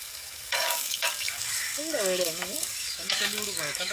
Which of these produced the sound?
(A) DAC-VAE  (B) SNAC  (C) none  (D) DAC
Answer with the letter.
D